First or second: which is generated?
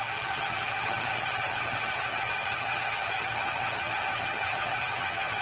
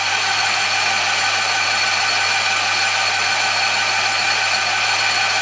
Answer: first